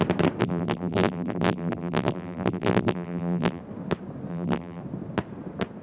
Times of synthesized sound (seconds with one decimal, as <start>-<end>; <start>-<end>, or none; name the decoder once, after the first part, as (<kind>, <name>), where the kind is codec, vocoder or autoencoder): 0.4-3.6 (vocoder, BigVGAN v2); 4.3-4.8